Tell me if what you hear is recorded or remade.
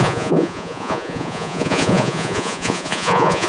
remade